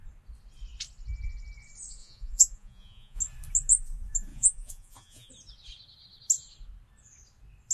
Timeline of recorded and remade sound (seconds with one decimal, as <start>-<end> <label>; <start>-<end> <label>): 0.0-2.0 recorded; 2.0-3.2 remade; 3.2-4.3 recorded; 4.3-5.3 remade; 5.3-7.7 recorded